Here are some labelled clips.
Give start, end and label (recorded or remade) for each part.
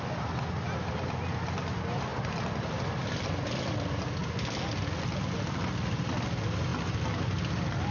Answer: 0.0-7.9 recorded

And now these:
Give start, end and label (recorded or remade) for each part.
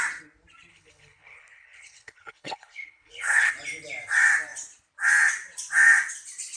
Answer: 0.0-0.7 recorded; 0.7-3.5 remade; 3.5-6.6 recorded